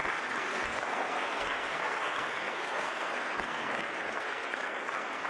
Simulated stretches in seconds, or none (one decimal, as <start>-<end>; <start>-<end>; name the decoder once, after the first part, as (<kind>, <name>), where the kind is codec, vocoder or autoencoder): 0.0-5.3 (codec, SNAC)